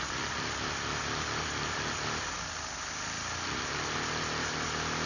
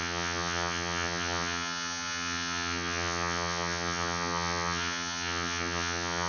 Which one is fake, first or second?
second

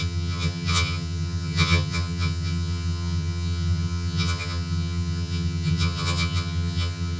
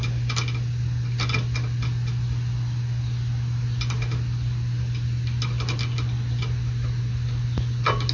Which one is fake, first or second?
first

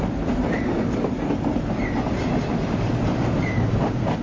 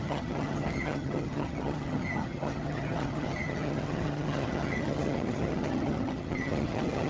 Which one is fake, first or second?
second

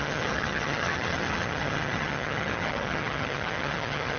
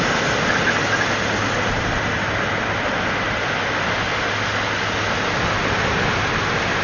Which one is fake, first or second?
first